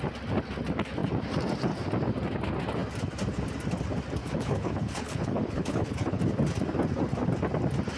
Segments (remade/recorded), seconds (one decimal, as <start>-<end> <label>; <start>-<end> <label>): 0.0-4.2 recorded; 4.2-6.2 remade; 6.2-8.0 recorded